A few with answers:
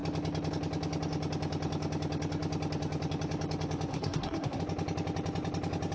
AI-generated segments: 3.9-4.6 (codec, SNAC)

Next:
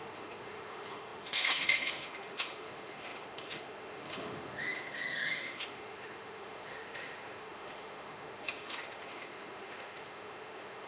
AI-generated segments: 0.0-10.9 (autoencoder, DAC-VAE)

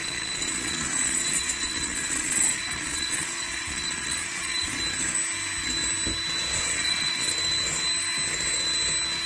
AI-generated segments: 0.0-4.7 (vocoder, Vocos); 6.5-7.3

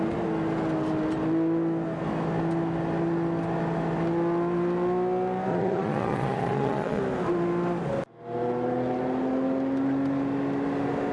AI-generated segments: 5.5-7.0 (vocoder, Vocos)

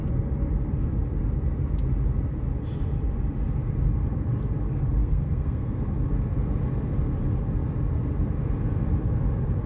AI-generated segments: 5.0-5.8 (codec, SNAC)

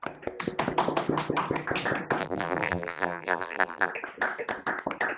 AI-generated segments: 2.2-3.9 (vocoder, BigVGAN v2)

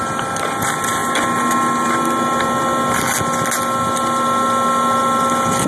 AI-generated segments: none